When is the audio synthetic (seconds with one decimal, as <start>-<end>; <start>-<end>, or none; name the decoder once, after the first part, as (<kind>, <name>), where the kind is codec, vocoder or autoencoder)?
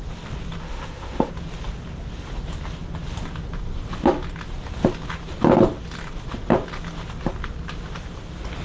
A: 0.6-1.3 (autoencoder, DAC-VAE)